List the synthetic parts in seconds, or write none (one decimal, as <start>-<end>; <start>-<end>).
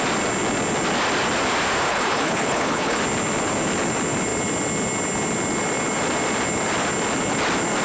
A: 1.9-3.0